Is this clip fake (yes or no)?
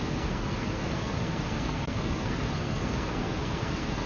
yes